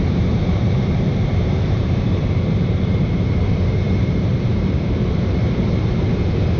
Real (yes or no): no